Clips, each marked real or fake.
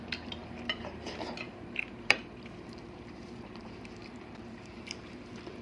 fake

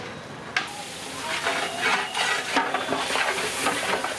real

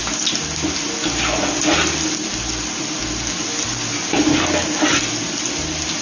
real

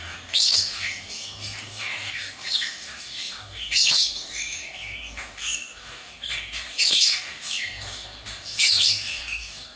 fake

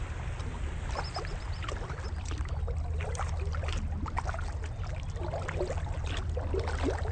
real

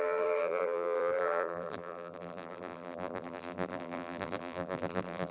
fake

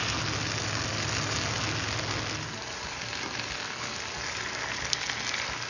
real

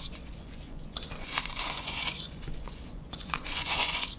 fake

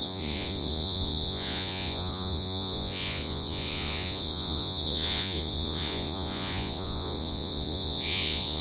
fake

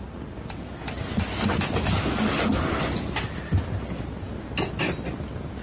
real